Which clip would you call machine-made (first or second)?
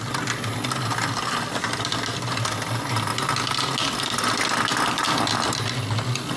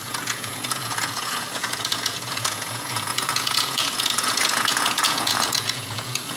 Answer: second